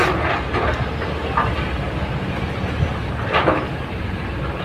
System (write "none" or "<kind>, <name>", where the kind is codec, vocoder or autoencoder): none